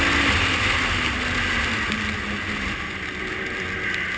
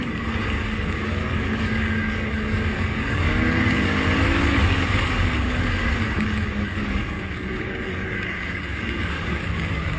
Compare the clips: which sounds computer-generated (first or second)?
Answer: second